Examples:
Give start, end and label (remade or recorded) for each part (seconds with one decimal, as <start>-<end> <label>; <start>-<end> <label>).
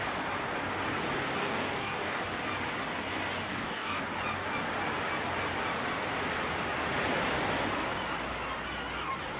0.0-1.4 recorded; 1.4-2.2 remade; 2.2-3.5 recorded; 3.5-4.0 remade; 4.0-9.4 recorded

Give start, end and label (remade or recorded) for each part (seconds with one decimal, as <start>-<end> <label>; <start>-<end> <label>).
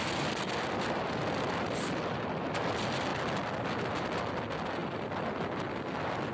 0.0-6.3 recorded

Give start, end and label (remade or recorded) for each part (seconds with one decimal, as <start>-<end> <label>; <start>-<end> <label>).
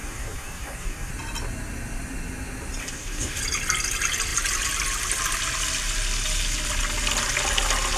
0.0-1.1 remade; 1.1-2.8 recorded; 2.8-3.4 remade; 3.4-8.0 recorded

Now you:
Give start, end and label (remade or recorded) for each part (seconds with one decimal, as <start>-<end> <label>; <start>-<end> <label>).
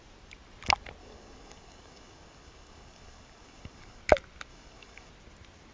0.0-1.0 recorded; 1.0-4.0 remade; 4.0-4.5 recorded; 4.5-5.1 remade; 5.1-5.7 recorded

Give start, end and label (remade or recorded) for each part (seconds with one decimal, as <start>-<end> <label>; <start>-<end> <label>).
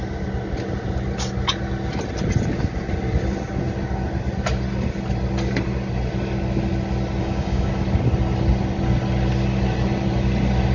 0.0-7.2 recorded; 7.2-7.7 remade; 7.7-10.7 recorded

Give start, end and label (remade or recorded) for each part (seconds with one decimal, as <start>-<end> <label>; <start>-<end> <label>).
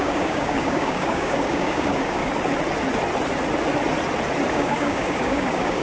0.0-2.2 remade; 2.2-4.5 recorded; 4.5-5.8 remade